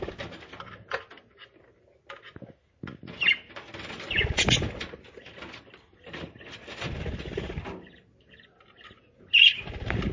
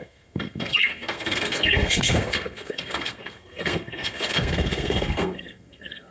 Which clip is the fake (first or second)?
second